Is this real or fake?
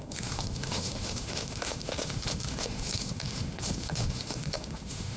fake